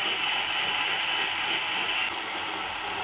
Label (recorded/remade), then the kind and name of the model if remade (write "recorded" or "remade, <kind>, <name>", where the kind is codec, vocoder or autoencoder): recorded